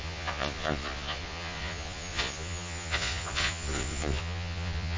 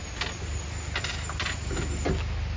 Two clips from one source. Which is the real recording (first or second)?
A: second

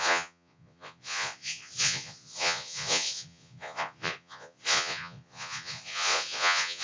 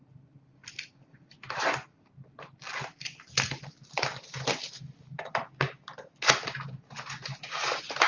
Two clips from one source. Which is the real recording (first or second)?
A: second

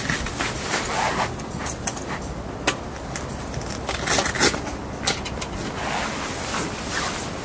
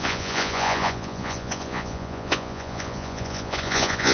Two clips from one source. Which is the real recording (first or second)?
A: first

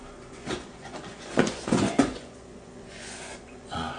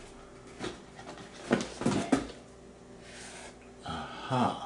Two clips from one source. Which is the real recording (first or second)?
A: second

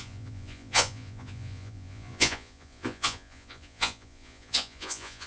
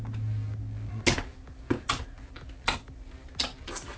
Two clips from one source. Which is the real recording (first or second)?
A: second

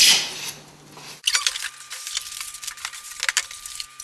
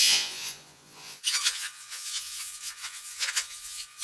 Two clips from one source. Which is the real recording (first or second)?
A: first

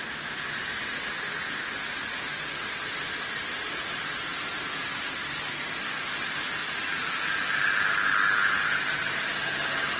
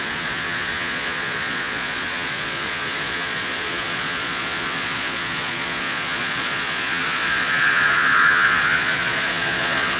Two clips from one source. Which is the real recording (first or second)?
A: first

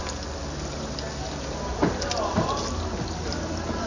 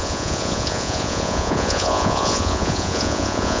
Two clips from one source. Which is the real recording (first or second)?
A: first